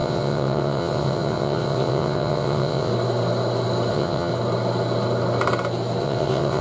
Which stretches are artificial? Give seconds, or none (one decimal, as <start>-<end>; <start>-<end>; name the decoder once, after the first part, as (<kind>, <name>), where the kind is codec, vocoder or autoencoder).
0.0-2.9 (vocoder, WaveNeXt); 3.9-4.3; 6.0-6.6